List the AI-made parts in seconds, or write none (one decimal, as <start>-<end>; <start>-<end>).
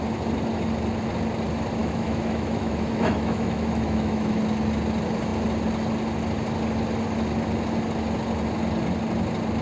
1.8-4.4